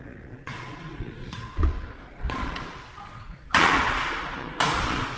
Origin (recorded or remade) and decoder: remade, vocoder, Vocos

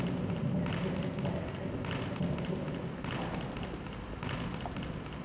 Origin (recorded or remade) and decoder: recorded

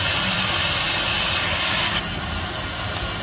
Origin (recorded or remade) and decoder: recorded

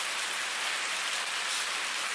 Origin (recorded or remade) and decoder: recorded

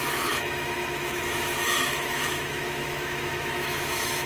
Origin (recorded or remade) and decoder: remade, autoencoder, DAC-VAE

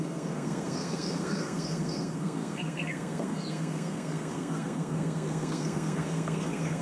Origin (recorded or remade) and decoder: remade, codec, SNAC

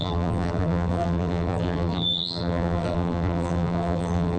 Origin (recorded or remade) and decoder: remade, vocoder, BigVGAN v2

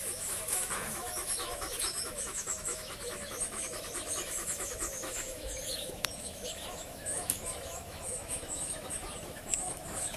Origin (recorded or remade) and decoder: remade, autoencoder, DAC-VAE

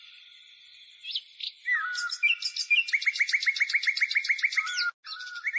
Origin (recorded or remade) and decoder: recorded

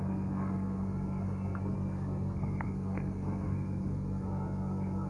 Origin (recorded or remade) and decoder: remade, codec, SNAC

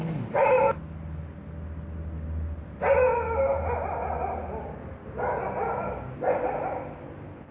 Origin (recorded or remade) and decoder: recorded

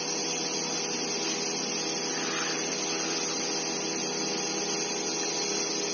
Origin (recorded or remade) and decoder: recorded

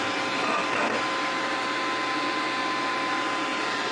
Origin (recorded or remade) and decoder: recorded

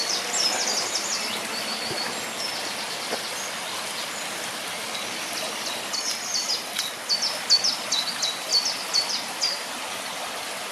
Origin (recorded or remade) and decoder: recorded